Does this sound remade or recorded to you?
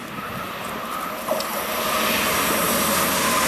recorded